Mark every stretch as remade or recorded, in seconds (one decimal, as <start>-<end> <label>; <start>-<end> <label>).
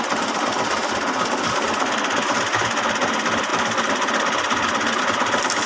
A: 0.0-5.7 recorded